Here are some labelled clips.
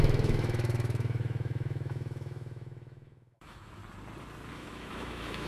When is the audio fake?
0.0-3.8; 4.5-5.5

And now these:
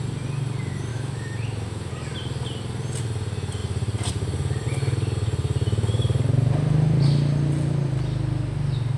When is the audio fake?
0.9-1.9